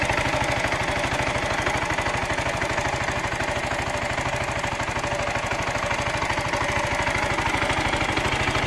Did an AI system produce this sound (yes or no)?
no